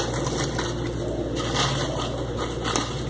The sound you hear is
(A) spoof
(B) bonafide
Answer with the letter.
B